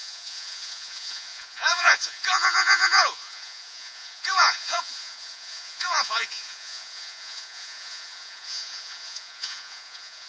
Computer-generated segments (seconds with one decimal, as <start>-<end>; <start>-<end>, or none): 0.0-10.3